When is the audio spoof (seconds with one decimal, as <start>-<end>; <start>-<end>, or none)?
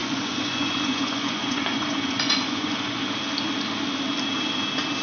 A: 0.0-3.0